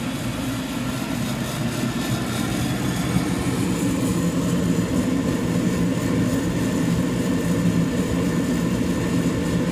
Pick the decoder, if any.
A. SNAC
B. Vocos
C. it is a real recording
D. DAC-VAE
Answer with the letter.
C